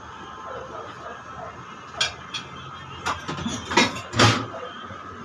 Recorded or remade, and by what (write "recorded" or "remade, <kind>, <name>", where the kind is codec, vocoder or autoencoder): recorded